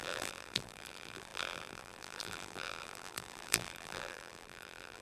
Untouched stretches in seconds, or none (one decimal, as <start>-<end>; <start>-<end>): none